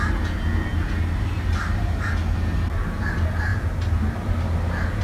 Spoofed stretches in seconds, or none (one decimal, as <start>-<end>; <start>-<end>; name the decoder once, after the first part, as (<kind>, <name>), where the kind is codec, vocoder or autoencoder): 3.5-4.3 (vocoder, BigVGAN v2)